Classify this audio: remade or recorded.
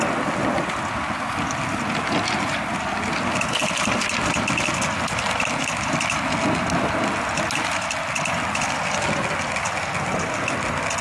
recorded